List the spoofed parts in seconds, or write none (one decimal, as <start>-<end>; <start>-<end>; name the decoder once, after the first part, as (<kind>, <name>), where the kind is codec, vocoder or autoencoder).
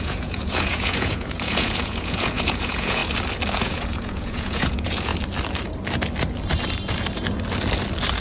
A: 0.0-3.0 (vocoder, Vocos); 3.6-5.1